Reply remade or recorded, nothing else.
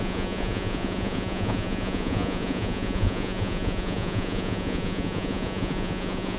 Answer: remade